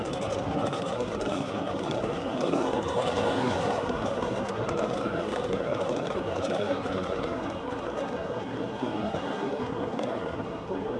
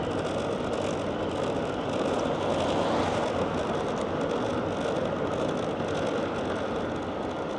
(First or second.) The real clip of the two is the second